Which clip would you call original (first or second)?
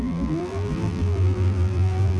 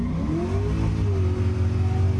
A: second